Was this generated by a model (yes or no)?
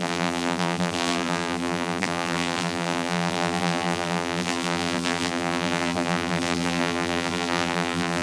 yes